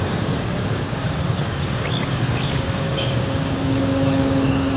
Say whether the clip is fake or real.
fake